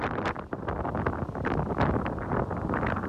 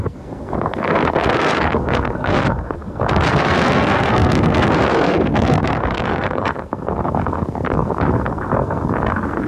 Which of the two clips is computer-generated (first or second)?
second